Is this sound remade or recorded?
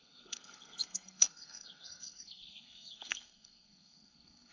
remade